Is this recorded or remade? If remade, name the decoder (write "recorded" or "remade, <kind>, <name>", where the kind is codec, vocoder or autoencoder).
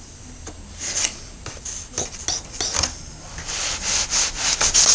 recorded